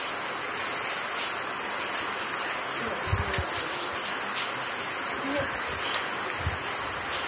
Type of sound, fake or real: real